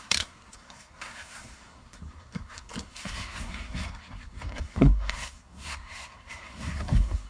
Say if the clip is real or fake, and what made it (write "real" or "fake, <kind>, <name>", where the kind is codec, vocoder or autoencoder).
fake, codec, SNAC